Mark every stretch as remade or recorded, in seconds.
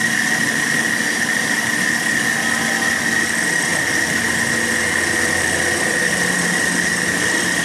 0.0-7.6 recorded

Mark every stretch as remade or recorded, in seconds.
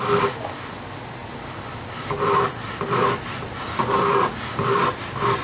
0.0-3.0 recorded; 3.0-4.3 remade; 4.3-4.8 recorded; 4.8-5.4 remade